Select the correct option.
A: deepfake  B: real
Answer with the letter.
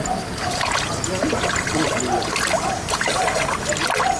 B